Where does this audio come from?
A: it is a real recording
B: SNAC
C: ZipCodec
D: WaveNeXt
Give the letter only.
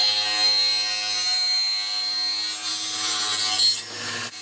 A